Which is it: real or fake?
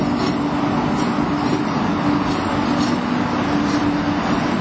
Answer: real